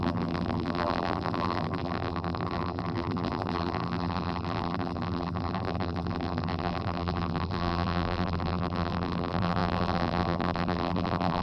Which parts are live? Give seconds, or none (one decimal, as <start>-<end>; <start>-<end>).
none